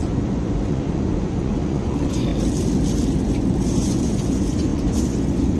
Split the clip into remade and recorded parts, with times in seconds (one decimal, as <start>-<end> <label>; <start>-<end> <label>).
0.0-2.3 remade; 2.3-3.2 recorded; 3.2-5.6 remade